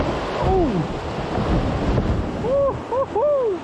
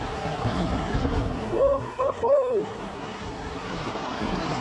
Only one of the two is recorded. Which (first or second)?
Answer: first